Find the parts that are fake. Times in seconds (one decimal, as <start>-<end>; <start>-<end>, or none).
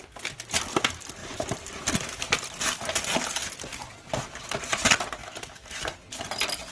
5.2-5.8